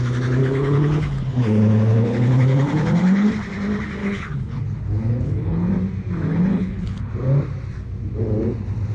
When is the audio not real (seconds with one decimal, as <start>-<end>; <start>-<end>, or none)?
0.4-3.3; 4.0-5.7; 6.3-7.1